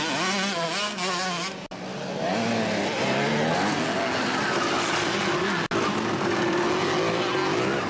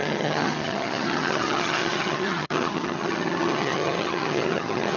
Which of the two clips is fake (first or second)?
second